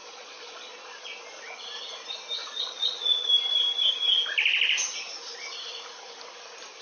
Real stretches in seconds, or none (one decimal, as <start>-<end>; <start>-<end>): 1.1-2.4; 3.3-6.8